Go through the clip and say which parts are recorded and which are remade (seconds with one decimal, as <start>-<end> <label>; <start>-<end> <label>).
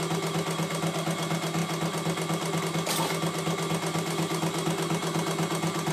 0.0-5.9 recorded